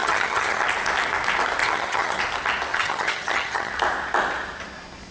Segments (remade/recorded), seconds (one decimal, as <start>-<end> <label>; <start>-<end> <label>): 0.0-0.6 remade; 0.6-1.6 recorded; 1.6-2.2 remade; 2.2-2.7 recorded; 2.7-3.7 remade; 3.7-5.1 recorded